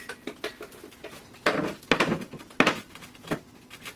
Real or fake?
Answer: real